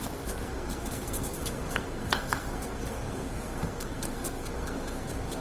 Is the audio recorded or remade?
remade